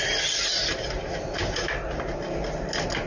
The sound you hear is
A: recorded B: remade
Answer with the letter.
A